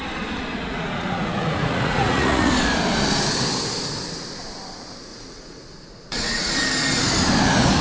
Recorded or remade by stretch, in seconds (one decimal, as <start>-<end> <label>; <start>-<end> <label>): 0.0-0.5 recorded; 0.5-2.5 remade; 2.5-5.1 recorded; 5.1-6.5 remade; 6.5-7.8 recorded